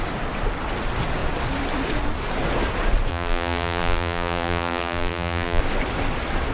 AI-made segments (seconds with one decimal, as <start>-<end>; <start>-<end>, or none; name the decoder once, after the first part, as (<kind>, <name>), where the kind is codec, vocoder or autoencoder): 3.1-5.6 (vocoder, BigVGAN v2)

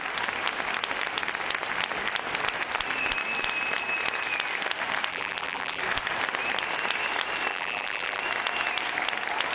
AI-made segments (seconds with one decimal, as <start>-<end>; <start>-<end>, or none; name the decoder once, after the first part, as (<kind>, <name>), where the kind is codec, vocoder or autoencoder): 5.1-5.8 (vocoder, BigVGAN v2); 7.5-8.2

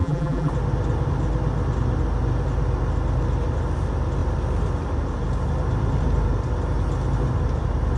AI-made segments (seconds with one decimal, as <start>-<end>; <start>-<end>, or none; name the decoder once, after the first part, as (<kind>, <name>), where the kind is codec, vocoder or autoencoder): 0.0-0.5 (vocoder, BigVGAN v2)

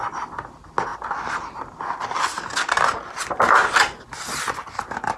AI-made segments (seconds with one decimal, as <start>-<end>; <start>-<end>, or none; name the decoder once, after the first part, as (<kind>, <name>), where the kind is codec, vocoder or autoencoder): none

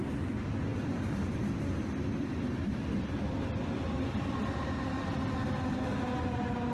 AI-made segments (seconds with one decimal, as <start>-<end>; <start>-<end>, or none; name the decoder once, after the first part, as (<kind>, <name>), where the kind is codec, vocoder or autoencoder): 0.7-4.7 (vocoder, BigVGAN v2)

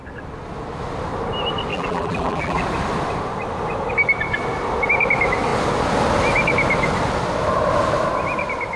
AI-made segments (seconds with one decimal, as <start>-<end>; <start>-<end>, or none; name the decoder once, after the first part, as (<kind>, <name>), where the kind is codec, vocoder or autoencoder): 1.7-2.6 (vocoder, BigVGAN v2)